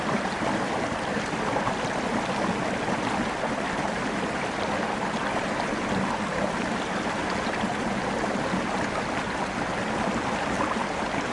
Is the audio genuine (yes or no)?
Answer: yes